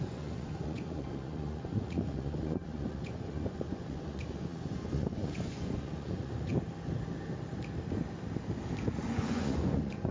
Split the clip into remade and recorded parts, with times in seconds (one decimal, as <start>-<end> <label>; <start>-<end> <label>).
0.0-6.5 remade; 6.5-9.0 recorded; 9.0-10.1 remade